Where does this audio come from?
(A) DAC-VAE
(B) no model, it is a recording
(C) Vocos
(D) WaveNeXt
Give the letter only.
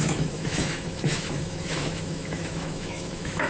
A